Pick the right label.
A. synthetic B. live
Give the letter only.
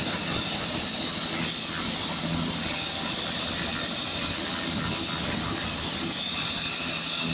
B